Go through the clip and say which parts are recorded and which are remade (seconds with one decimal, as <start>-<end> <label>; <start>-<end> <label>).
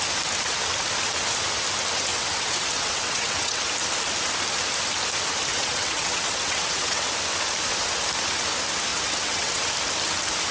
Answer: 0.0-2.1 recorded; 2.1-3.6 remade; 3.6-5.5 recorded; 5.5-7.1 remade; 7.1-8.9 recorded; 8.9-9.7 remade; 9.7-10.5 recorded